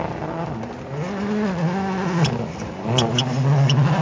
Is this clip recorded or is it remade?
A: recorded